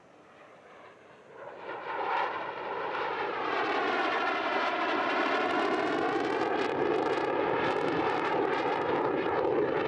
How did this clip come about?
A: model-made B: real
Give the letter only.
A